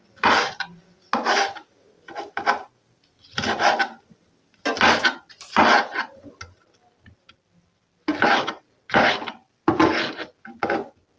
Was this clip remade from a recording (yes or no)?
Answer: no